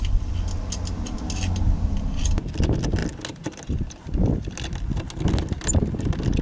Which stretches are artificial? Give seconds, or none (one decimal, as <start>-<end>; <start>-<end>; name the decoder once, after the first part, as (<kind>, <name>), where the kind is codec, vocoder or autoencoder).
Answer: none